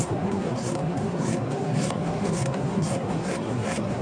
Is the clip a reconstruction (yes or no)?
yes